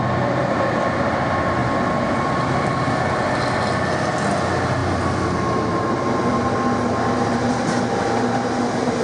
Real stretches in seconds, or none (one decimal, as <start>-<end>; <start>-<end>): 0.0-9.0